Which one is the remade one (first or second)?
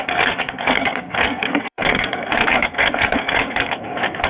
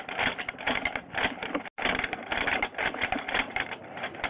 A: first